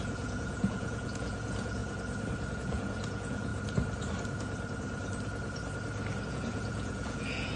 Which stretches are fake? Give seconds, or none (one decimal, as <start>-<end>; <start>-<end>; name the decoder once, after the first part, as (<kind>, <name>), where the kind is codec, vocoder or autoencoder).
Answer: 0.0-1.8 (vocoder, Vocos); 2.5-3.5; 6.3-7.6